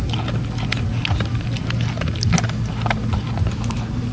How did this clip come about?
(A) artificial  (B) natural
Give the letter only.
B